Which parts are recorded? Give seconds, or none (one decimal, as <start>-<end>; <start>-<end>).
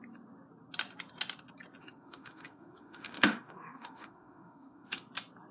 0.0-1.8; 5.1-5.5